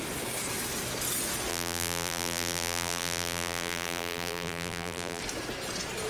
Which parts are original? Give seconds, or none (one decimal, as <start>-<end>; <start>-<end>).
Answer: 0.0-1.5; 5.2-6.1